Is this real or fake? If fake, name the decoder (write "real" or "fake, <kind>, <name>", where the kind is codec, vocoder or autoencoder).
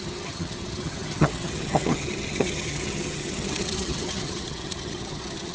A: fake, vocoder, HiFi-GAN